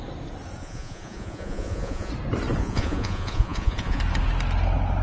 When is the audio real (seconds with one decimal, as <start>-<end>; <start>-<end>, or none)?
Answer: 0.0-0.6; 2.1-2.6; 4.0-5.0